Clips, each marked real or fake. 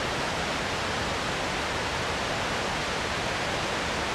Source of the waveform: real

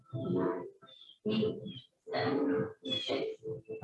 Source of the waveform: real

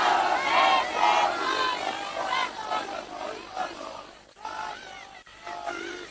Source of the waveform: real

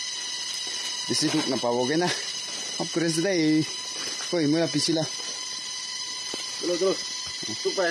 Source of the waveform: real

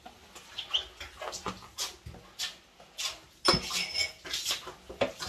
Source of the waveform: real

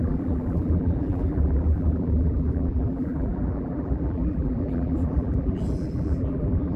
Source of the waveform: fake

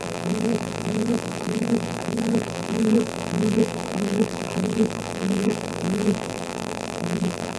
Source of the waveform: fake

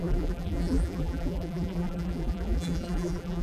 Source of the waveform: fake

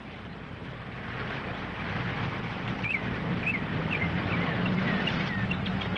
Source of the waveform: fake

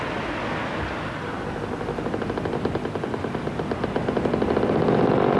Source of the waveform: real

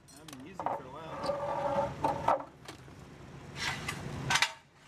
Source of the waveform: real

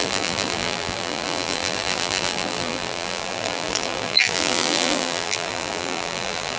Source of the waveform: fake